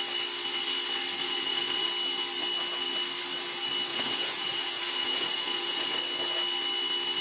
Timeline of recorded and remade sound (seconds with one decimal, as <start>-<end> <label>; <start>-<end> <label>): 0.0-1.2 recorded; 1.2-1.9 remade; 1.9-3.9 recorded; 3.9-6.0 remade; 6.0-7.2 recorded